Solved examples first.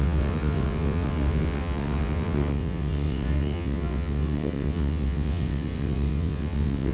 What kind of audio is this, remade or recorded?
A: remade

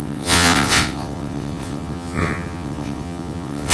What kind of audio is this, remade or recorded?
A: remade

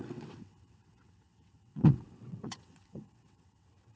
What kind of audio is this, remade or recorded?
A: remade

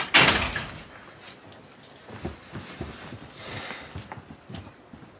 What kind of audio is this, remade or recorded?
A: recorded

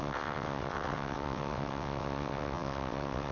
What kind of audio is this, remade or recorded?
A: remade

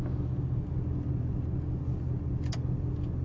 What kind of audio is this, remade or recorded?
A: recorded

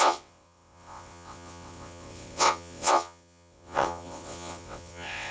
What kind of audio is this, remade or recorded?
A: remade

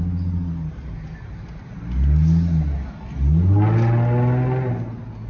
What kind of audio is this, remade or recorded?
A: recorded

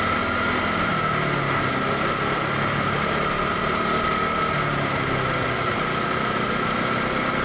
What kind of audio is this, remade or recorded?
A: recorded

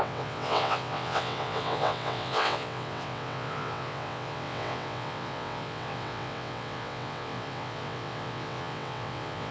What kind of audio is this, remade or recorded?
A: remade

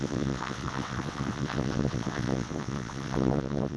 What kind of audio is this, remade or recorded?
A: remade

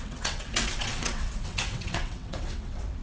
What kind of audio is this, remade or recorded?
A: remade